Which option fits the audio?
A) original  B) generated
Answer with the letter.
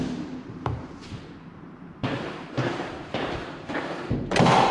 B